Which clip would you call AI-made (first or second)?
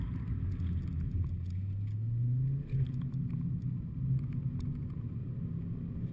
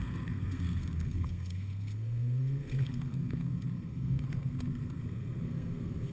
second